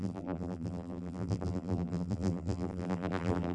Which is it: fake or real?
fake